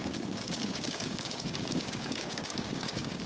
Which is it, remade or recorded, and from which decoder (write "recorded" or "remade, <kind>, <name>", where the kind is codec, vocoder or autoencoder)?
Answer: remade, codec, DAC